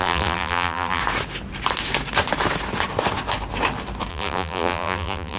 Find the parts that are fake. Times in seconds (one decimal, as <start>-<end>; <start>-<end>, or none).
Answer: 0.0-1.0; 4.1-5.4